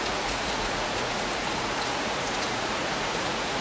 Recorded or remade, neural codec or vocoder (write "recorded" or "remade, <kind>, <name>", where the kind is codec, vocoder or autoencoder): remade, vocoder, Vocos